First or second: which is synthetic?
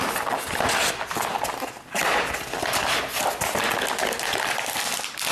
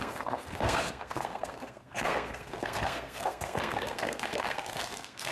second